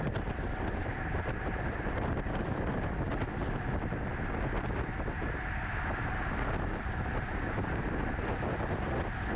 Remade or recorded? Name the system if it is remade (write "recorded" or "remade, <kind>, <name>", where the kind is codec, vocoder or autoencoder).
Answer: recorded